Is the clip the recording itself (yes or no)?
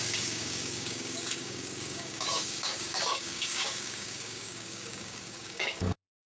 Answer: no